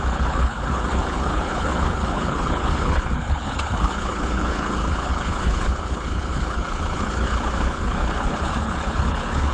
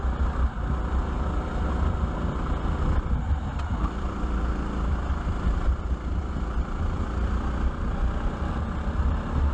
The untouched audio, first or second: second